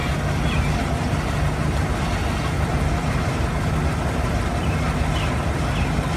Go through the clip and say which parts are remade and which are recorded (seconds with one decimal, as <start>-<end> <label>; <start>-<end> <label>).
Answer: 0.0-6.2 recorded